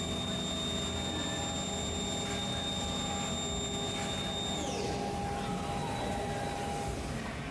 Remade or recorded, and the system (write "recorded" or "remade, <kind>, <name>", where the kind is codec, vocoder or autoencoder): recorded